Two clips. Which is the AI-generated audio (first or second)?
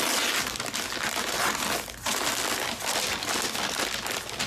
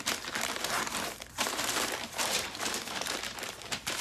second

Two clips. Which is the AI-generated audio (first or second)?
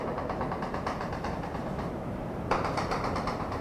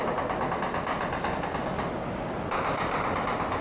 first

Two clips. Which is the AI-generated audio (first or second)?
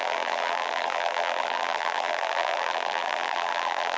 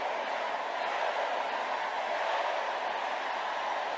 first